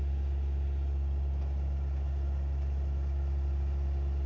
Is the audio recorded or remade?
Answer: recorded